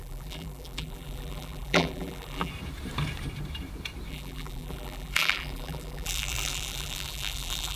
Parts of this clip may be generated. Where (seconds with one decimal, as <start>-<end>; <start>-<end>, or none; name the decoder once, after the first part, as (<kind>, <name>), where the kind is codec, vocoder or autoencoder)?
0.0-2.5 (vocoder, BigVGAN v2); 4.1-7.8